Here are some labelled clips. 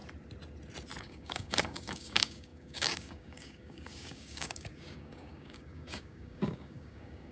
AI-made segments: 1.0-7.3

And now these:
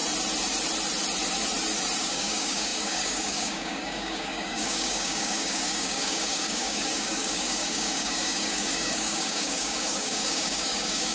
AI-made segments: 2.0-11.1

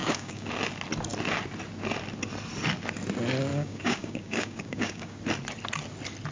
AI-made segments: 0.0-0.5; 3.5-5.2

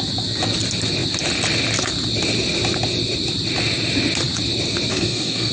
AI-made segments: 4.9-5.5

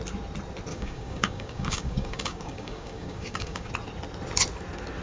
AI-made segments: 0.7-3.7

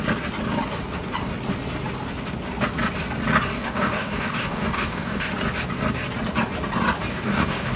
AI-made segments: 3.5-5.3; 7.1-7.8

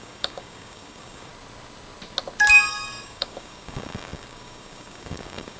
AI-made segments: 0.0-1.3; 2.7-5.6